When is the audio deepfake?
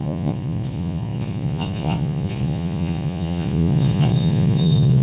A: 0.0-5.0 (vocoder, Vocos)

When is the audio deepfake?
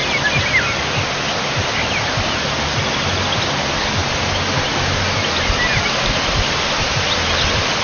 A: none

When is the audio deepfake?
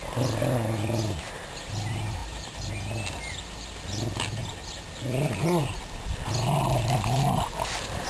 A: none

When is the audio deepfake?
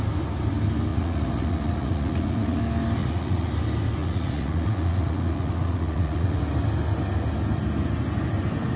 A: 0.9-2.6 (vocoder, Vocos); 3.0-3.5; 4.0-6.4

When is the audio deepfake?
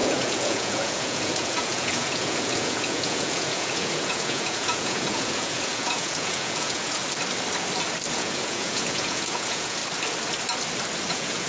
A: 0.0-7.0 (vocoder, Vocos); 8.1-9.8; 11.1-11.5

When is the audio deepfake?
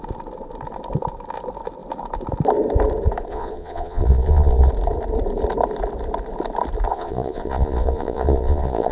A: 3.3-4.7 (vocoder, Vocos); 6.9-8.9